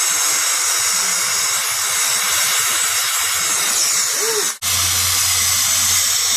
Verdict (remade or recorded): recorded